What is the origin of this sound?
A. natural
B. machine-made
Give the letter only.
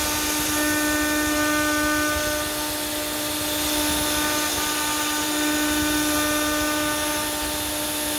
A